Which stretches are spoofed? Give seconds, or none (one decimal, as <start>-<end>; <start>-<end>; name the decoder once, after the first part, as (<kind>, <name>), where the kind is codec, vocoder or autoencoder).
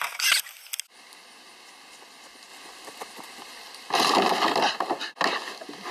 none